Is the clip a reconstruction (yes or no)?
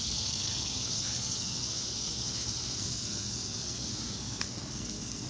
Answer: yes